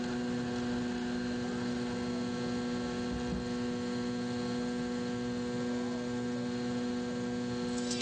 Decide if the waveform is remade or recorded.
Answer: recorded